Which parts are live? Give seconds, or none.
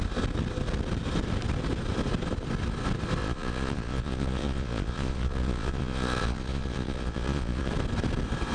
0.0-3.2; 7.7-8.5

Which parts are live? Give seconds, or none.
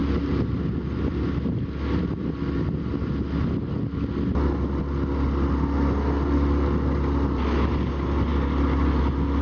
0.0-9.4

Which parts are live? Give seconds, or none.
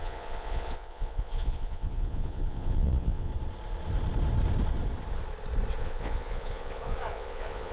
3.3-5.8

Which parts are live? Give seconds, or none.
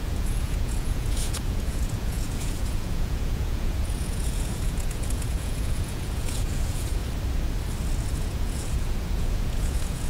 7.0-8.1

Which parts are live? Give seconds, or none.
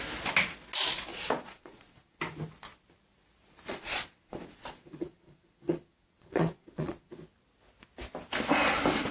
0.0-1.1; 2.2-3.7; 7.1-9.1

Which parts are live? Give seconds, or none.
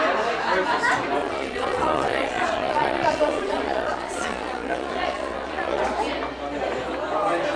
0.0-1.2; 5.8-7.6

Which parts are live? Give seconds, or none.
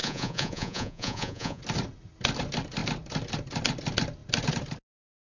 1.6-5.4